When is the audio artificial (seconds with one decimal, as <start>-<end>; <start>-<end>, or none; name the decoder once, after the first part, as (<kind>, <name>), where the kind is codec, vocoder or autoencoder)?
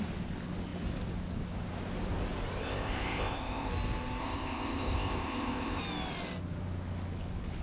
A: 2.6-3.7 (codec, ZipCodec); 4.2-5.8